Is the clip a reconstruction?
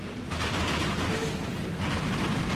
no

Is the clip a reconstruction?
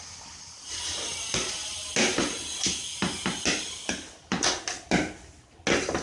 no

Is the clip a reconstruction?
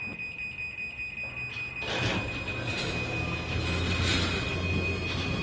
no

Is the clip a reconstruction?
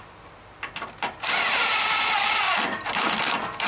yes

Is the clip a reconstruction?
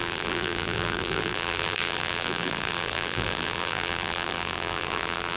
yes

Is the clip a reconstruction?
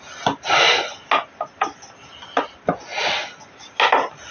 no